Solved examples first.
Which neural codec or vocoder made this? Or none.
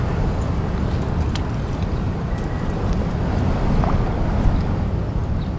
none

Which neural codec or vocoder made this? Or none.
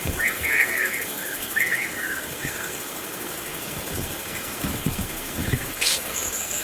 codec, SNAC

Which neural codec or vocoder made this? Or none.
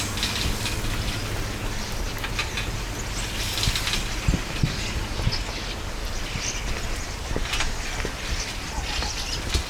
none